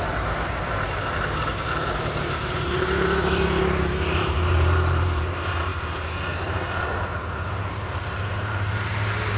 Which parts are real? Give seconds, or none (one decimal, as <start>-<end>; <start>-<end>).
none